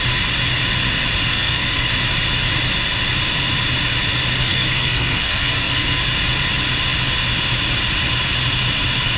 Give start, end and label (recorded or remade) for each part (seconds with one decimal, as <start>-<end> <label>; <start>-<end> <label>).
0.0-1.3 recorded; 1.3-1.9 remade; 1.9-4.4 recorded; 4.4-6.0 remade; 6.0-9.2 recorded